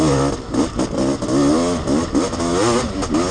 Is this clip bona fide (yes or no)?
yes